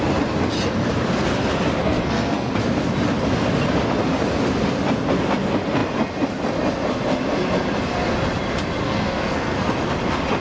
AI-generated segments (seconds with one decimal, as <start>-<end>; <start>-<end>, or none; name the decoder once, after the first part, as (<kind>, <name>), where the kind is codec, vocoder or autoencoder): 1.8-2.5 (codec, SNAC); 8.8-9.7